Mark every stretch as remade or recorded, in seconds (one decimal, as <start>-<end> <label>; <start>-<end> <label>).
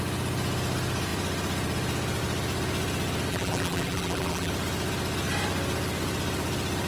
0.0-3.3 recorded; 3.3-4.5 remade; 4.5-6.9 recorded